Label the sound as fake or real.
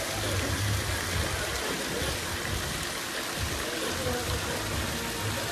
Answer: real